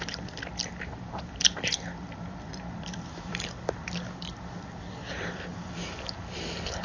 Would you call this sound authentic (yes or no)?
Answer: no